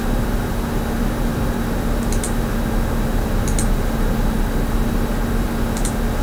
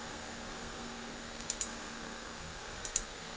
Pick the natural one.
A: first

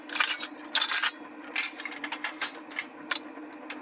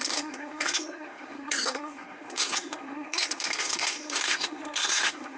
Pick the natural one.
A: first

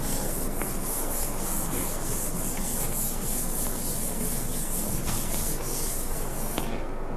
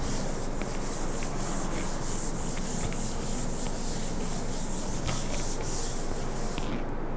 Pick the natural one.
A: second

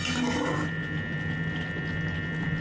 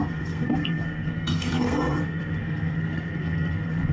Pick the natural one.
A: first